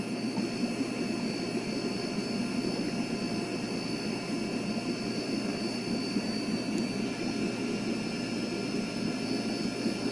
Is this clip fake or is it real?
real